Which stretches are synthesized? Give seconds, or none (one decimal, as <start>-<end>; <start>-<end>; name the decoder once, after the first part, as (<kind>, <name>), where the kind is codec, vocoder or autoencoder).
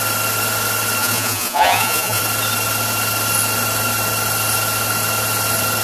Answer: 1.0-2.2 (vocoder, Vocos)